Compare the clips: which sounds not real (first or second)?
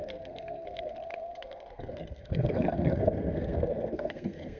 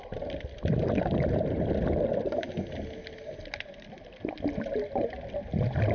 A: first